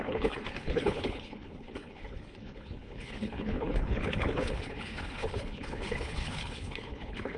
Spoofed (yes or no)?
yes